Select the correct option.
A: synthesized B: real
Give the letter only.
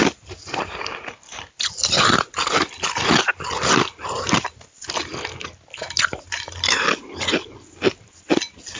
B